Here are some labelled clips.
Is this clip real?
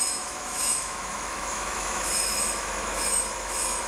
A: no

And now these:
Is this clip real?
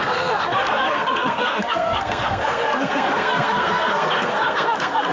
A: no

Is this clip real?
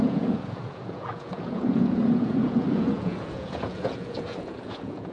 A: no